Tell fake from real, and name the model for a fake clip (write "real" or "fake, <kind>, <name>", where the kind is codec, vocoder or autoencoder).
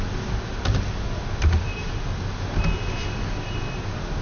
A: real